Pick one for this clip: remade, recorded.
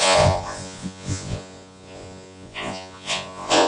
remade